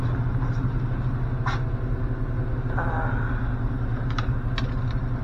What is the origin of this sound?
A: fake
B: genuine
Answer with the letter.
B